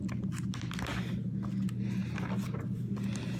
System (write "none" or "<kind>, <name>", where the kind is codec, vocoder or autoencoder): none